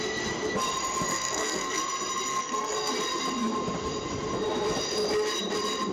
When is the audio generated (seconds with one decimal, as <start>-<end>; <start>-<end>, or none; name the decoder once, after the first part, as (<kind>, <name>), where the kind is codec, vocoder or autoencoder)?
1.1-1.8 (codec, SNAC); 2.3-2.9